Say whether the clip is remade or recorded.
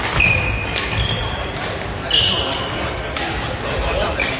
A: recorded